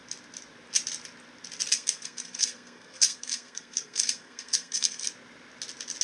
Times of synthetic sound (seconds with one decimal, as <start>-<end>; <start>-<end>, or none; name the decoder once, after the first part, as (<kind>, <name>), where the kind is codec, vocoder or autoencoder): 1.7-5.1 (codec, SNAC)